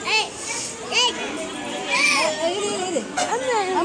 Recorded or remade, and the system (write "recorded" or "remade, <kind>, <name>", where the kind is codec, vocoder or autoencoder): recorded